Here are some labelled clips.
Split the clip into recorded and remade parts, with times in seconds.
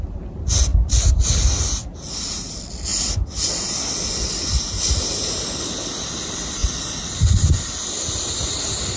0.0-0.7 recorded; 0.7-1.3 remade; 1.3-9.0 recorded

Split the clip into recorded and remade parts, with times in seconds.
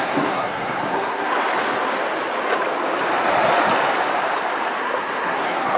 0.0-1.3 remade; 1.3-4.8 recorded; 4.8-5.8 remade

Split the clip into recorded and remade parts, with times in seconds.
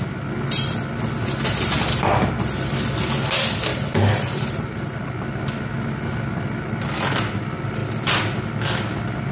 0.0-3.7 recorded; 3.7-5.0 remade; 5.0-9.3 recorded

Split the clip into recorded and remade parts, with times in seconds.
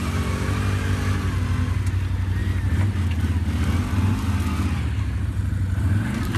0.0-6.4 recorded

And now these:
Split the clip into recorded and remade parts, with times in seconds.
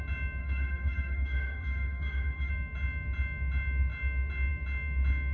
0.0-0.4 recorded; 0.4-2.5 remade; 2.5-5.3 recorded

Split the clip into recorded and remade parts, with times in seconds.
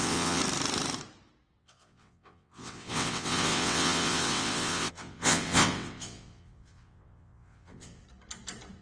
0.0-0.4 remade; 0.4-1.6 recorded; 1.6-8.0 remade; 8.0-8.8 recorded